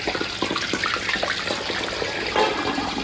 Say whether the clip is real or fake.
real